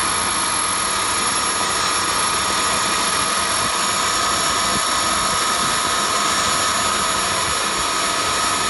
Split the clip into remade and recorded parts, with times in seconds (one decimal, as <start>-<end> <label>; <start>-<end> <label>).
0.0-8.7 recorded